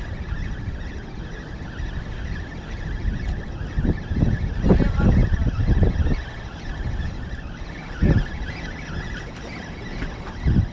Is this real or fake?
real